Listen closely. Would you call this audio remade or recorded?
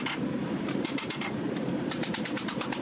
remade